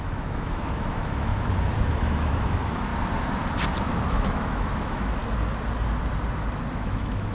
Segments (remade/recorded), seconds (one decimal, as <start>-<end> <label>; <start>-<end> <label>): 0.0-1.3 remade; 1.3-1.9 recorded; 1.9-2.9 remade; 2.9-4.1 recorded; 4.1-5.2 remade; 5.2-6.7 recorded; 6.7-7.3 remade